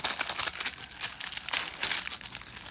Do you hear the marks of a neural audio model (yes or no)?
no